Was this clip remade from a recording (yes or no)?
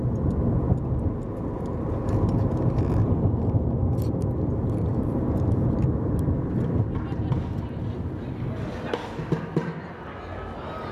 no